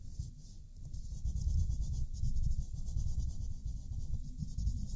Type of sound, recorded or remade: recorded